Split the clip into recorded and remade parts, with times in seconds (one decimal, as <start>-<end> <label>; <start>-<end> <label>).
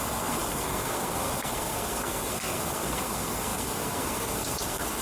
0.0-5.0 remade